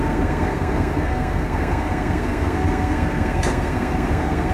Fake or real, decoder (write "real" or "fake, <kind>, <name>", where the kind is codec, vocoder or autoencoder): fake, codec, SNAC